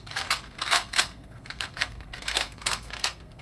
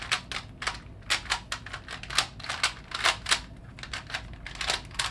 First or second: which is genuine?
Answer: second